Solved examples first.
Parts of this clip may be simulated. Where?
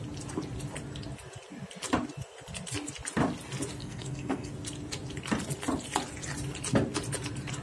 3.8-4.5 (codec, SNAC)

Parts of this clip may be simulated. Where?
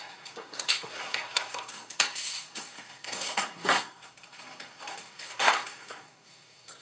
0.0-6.8 (codec, SNAC)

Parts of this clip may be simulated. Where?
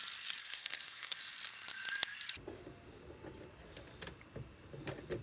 0.4-1.2 (codec, SNAC)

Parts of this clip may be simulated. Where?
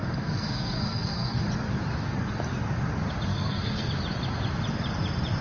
0.0-1.4 (codec, SNAC); 3.3-3.9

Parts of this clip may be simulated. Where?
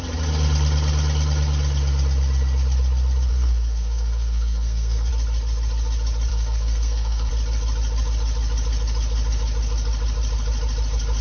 3.3-5.1 (codec, SNAC); 6.3-7.3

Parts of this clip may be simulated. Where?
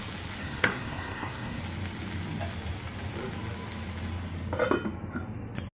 0.4-1.6 (codec, SNAC)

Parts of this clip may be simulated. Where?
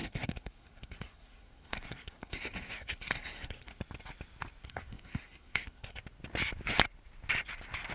0.0-3.8 (codec, SNAC); 4.6-6.0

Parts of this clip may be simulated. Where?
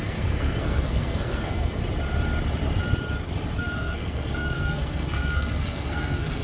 0.0-1.8 (codec, SNAC); 3.6-6.4